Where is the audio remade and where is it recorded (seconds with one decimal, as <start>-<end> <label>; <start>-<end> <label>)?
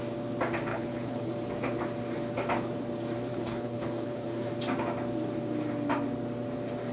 0.0-0.7 recorded; 0.7-1.3 remade; 1.3-3.3 recorded; 3.3-4.5 remade; 4.5-6.9 recorded